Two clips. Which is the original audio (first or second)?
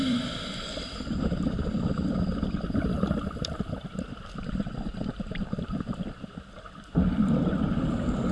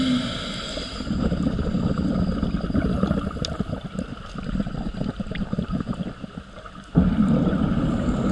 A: second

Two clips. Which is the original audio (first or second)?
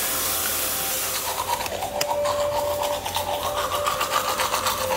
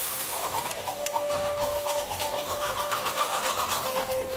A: first